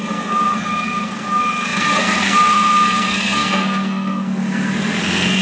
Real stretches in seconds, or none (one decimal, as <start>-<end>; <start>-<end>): none